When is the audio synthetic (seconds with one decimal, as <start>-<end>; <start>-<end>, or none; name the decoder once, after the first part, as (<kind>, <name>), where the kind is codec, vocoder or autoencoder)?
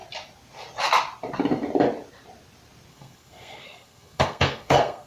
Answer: 2.9-5.1 (codec, SNAC)